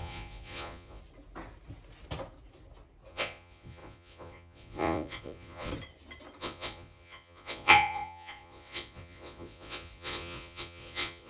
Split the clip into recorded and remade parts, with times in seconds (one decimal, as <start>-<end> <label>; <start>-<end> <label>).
0.0-1.0 remade; 1.0-3.1 recorded; 3.1-5.7 remade; 5.7-6.4 recorded; 6.4-11.3 remade